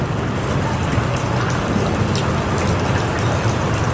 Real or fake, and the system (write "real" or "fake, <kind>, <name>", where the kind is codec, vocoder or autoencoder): real